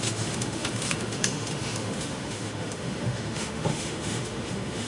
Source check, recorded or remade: remade